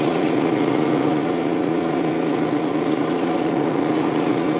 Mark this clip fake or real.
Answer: fake